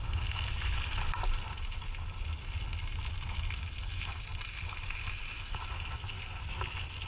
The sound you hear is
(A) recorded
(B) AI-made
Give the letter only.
A